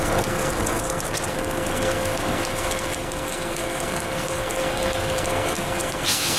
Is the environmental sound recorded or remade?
remade